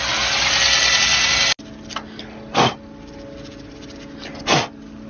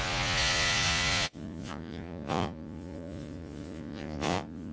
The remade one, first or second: second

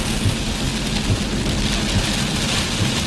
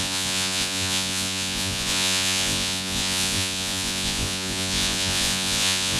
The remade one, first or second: second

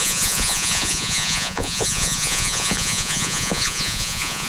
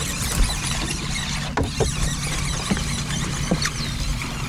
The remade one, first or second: first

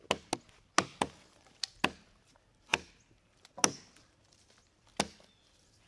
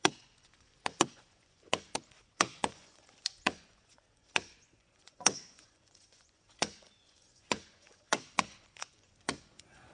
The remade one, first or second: second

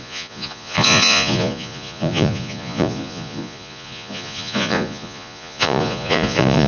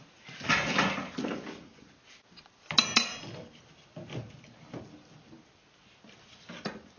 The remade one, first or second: first